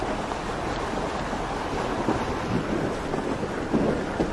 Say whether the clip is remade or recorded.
recorded